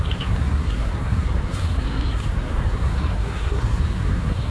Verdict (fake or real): fake